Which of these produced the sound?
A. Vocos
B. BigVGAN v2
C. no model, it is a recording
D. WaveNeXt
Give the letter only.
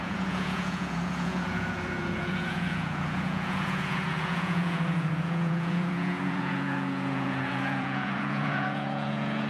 A